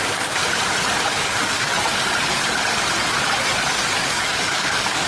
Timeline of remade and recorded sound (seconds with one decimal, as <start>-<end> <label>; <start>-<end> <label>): 0.0-0.4 remade; 0.4-1.1 recorded; 1.1-1.7 remade; 1.7-4.0 recorded; 4.0-5.1 remade